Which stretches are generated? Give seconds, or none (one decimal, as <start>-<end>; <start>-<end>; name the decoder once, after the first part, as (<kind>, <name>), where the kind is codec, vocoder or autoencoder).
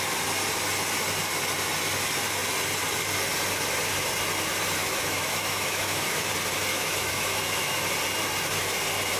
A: 4.8-6.3 (autoencoder, DAC-VAE); 6.7-7.9